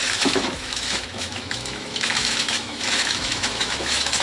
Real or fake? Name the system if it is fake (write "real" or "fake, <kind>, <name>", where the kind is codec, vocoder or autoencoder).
fake, autoencoder, DAC-VAE